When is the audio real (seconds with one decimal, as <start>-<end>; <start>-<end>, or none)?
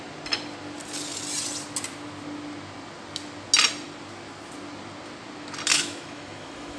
0.0-5.7